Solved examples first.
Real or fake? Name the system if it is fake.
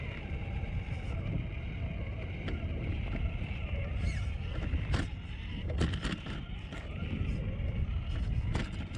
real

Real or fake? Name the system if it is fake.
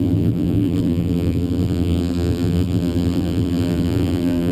fake, vocoder, BigVGAN v2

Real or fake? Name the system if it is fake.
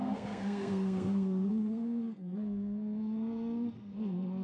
fake, codec, SNAC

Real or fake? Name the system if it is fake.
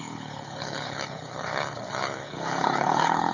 fake, codec, HILCodec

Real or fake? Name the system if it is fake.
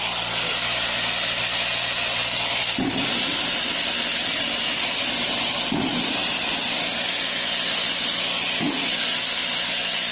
real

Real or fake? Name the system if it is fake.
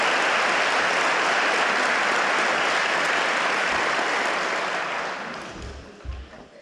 real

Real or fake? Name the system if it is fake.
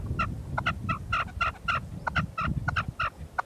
real